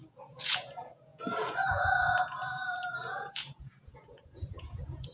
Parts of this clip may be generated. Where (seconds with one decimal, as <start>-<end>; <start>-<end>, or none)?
0.0-5.1